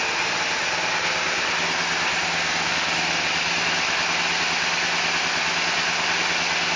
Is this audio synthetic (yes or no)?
no